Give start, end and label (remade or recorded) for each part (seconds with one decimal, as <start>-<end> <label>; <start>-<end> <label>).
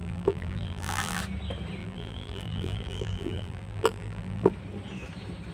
0.0-1.2 remade; 1.2-1.8 recorded; 1.8-4.5 remade; 4.5-5.5 recorded